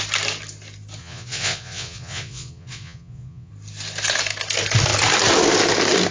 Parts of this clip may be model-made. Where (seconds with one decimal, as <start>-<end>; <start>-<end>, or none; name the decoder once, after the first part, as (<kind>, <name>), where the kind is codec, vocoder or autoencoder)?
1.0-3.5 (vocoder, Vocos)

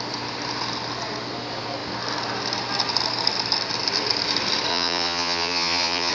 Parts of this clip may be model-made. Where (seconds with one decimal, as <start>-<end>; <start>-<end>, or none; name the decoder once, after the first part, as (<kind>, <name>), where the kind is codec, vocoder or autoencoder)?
4.7-6.1 (vocoder, Vocos)

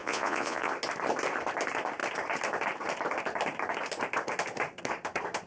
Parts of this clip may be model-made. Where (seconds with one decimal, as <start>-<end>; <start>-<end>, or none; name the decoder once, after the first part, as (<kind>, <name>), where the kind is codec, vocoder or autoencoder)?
0.0-0.7 (vocoder, Vocos)

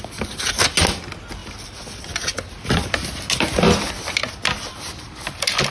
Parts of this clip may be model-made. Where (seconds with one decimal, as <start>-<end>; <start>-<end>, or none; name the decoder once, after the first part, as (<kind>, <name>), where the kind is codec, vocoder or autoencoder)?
none

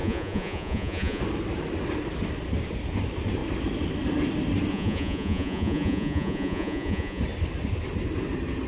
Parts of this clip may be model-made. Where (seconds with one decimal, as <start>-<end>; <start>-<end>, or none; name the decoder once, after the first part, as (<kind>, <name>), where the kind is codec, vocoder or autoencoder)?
0.0-1.2 (vocoder, Vocos); 4.7-7.2

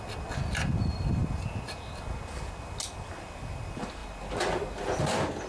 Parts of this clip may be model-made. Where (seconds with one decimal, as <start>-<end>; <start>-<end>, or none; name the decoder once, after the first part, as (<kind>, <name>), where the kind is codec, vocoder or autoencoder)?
none